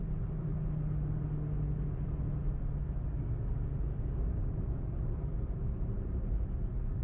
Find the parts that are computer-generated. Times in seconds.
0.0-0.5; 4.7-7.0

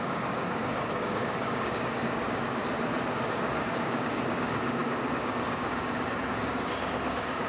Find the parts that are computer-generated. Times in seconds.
0.0-2.6; 3.1-7.5

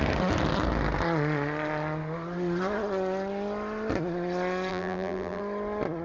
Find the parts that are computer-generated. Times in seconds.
4.7-5.4

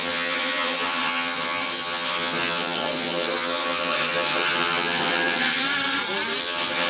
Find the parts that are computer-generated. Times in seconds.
0.0-5.6; 6.4-6.9

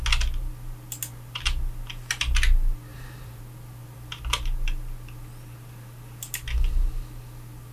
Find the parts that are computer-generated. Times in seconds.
2.9-3.4

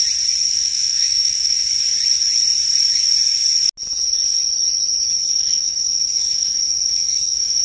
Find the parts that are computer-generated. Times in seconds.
0.5-1.7; 5.3-7.6

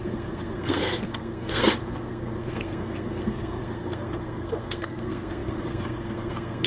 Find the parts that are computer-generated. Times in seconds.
0.0-6.7

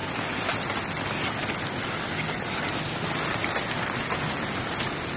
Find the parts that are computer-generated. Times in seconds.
none